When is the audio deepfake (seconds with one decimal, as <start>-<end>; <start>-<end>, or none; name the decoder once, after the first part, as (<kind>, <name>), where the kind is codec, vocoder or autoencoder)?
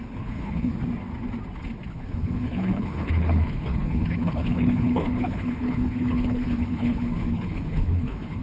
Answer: 0.0-0.7 (codec, HILCodec); 1.9-8.4